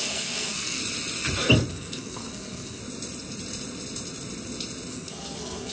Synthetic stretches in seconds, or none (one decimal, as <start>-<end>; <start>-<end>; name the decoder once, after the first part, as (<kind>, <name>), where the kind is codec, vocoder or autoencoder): 0.0-0.8 (codec, SNAC); 1.7-2.8; 4.9-5.7